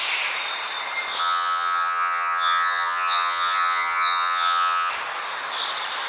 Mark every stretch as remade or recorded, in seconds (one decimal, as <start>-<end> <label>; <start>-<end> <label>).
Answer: 0.0-1.2 recorded; 1.2-4.9 remade; 4.9-6.1 recorded